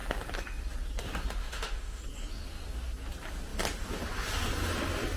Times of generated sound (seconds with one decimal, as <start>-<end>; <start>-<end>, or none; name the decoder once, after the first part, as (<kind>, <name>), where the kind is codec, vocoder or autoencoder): 1.4-2.0 (autoencoder, DAC-VAE)